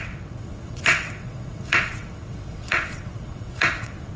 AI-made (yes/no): yes